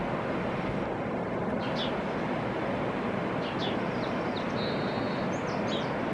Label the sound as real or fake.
real